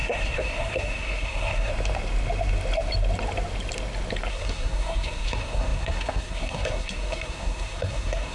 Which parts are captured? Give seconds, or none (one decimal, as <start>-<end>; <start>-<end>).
1.7-4.3